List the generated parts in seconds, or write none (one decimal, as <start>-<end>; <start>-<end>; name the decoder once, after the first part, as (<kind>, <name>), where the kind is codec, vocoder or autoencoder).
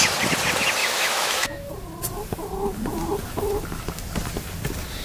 0.8-1.7 (autoencoder, DAC-VAE)